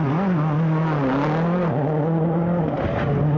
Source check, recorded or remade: recorded